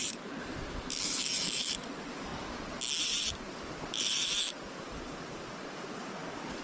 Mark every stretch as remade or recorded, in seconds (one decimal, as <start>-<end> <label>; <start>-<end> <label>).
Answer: 0.0-2.3 remade; 2.3-3.0 recorded; 3.0-6.6 remade